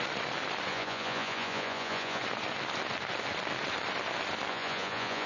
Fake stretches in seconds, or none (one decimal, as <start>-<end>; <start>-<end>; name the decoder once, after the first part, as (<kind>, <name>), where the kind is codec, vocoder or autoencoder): 0.7-2.2 (vocoder, Vocos); 4.5-5.3